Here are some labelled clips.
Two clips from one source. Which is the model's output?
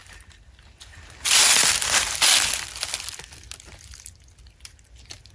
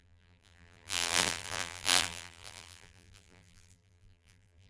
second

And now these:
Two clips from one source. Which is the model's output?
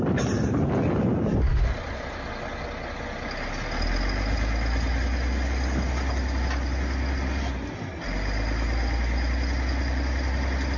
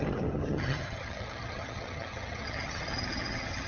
second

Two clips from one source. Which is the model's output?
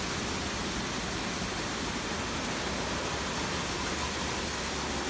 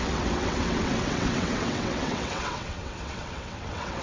second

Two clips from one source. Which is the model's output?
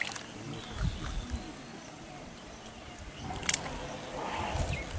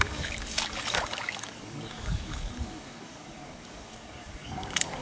second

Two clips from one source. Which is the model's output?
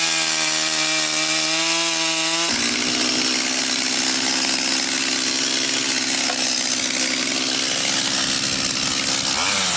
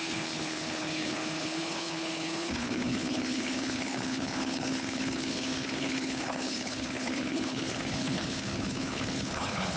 second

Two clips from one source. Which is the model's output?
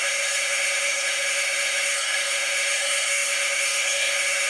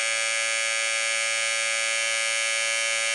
first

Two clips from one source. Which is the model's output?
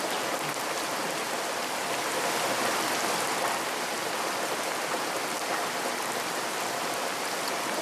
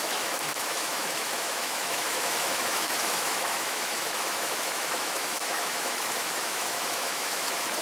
second